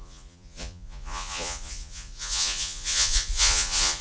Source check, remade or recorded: remade